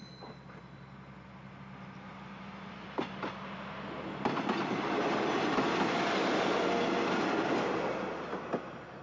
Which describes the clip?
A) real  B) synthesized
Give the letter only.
A